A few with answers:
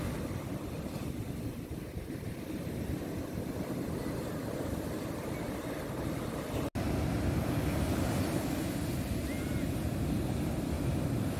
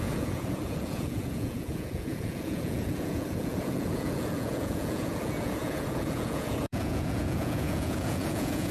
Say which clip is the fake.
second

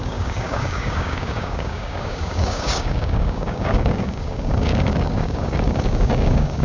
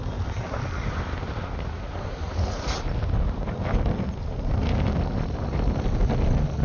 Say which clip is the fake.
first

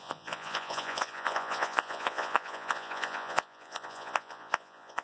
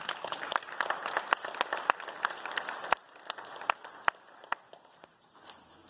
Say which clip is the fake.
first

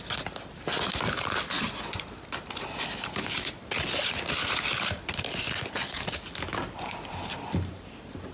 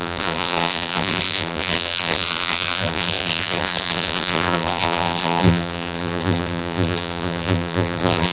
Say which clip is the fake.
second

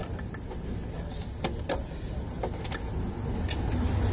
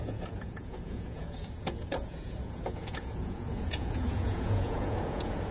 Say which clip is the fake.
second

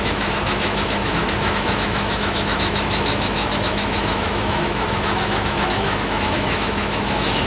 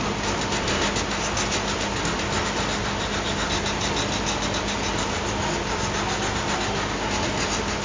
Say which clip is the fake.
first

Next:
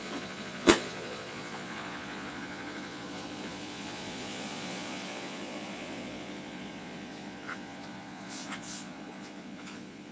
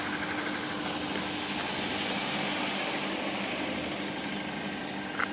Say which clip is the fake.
first